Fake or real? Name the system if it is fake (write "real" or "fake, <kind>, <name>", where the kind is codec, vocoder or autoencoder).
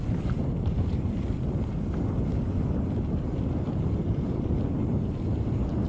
real